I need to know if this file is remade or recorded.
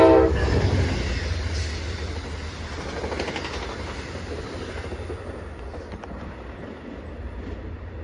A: recorded